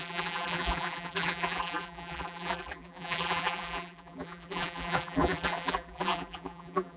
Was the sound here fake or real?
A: fake